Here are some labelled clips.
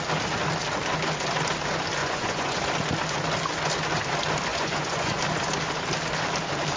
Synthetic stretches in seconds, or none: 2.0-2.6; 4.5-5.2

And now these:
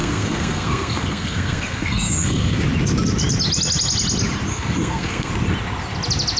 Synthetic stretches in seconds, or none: 0.0-2.6; 4.5-5.3

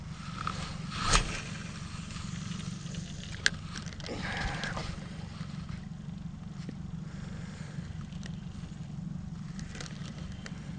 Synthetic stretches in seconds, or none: 4.8-5.7